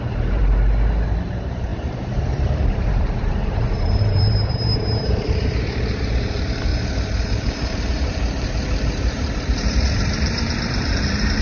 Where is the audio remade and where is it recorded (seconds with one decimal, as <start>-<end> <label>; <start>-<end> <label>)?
0.0-0.4 remade; 0.4-1.2 recorded; 1.2-6.7 remade; 6.7-7.5 recorded; 7.5-11.4 remade